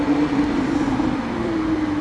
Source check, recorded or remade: remade